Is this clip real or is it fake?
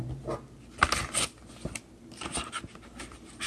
real